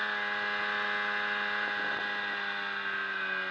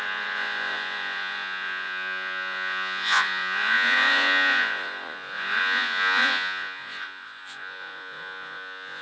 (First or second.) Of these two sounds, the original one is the first